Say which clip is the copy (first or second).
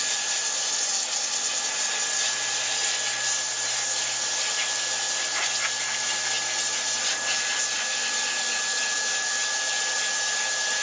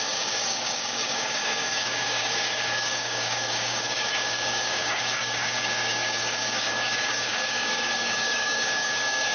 second